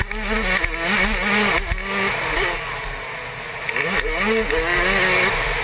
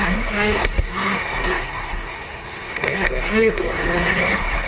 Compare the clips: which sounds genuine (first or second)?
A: first